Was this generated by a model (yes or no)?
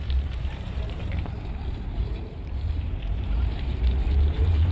yes